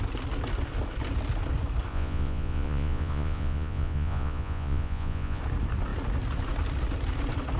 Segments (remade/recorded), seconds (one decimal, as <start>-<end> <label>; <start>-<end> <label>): 0.0-1.9 recorded; 1.9-5.4 remade; 5.4-7.6 recorded